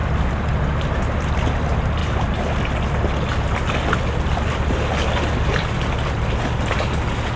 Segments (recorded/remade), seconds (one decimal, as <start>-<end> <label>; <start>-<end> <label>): 0.0-7.4 recorded